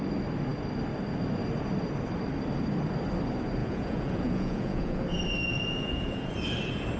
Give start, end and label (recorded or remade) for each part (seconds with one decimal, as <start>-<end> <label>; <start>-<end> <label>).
0.0-3.6 recorded; 3.6-5.0 remade; 5.0-5.5 recorded; 5.5-6.3 remade; 6.3-7.0 recorded